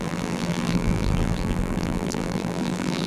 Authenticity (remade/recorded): remade